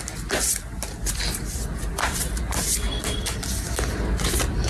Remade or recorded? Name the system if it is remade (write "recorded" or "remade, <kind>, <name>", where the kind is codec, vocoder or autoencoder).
recorded